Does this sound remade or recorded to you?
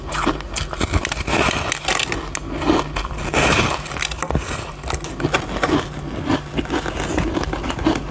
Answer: recorded